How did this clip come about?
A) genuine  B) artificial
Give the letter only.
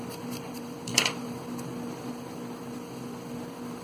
B